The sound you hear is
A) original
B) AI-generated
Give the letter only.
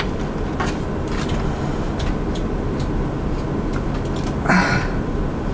A